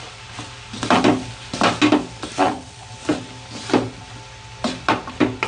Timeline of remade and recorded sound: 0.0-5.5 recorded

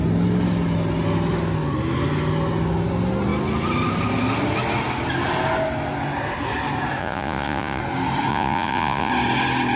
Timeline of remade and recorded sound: 0.0-7.0 recorded; 7.0-7.8 remade; 7.8-8.3 recorded; 8.3-9.1 remade; 9.1-9.8 recorded